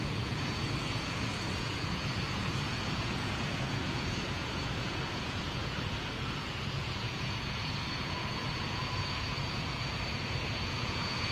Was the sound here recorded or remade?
remade